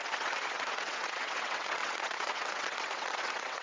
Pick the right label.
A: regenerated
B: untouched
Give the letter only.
A